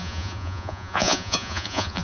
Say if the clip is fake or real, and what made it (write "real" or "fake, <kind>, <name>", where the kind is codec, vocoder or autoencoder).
fake, vocoder, Vocos